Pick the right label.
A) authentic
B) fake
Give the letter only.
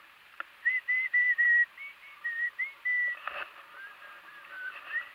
B